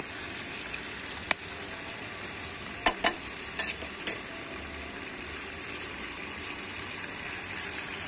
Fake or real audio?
fake